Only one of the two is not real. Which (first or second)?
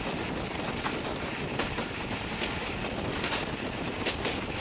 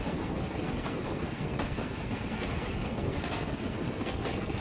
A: second